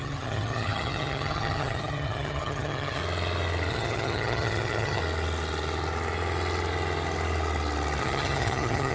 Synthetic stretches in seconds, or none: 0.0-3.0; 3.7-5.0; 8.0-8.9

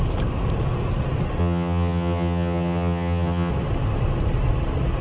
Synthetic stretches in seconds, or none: 1.4-3.5

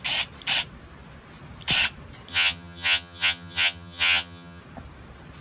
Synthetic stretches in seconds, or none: 2.3-4.6

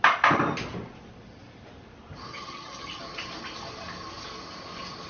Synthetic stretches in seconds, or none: 2.3-3.0

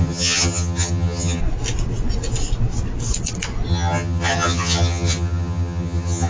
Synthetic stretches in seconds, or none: 0.0-1.4; 3.7-6.3

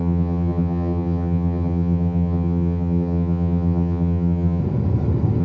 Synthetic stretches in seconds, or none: 0.0-4.6

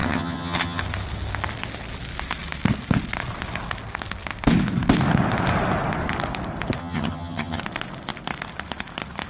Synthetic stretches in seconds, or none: 0.0-0.8; 6.8-7.6